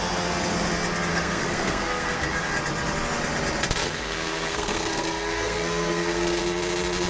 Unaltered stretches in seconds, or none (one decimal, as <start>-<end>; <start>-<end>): 0.0-1.1; 2.6-3.8; 6.4-7.1

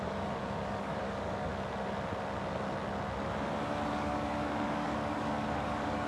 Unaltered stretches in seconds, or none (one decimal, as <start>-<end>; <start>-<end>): 1.5-3.9

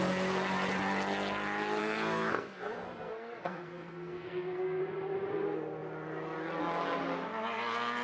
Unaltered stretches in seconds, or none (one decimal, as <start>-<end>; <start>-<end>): 0.0-1.8; 4.8-8.0

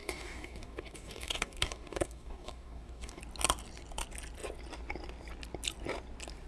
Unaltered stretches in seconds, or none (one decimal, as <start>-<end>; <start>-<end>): 3.2-6.5

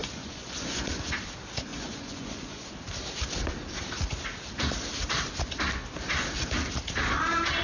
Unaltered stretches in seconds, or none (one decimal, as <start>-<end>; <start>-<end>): 0.9-1.7; 2.8-7.6

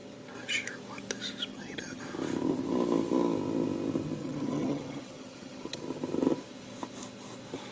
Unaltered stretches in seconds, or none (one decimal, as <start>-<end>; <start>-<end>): 0.0-1.5; 2.0-4.2; 5.8-7.7

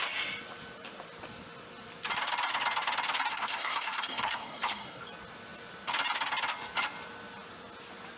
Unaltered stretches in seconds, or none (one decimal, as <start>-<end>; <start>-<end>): 0.0-3.3; 5.0-8.2